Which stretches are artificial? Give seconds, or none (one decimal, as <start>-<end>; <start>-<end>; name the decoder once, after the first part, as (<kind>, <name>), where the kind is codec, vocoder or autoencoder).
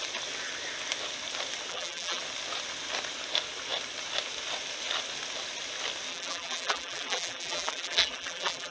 1.7-2.2 (vocoder, BigVGAN v2); 6.1-8.7